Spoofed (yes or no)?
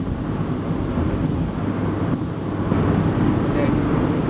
no